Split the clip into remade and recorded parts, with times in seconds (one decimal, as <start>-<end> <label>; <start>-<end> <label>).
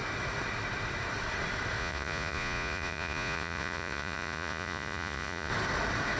0.0-1.8 recorded; 1.8-5.5 remade; 5.5-6.2 recorded